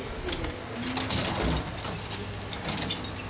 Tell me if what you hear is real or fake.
real